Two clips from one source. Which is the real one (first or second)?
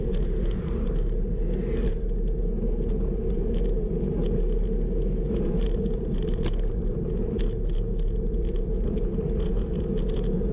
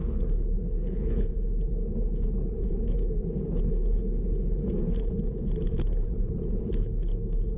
first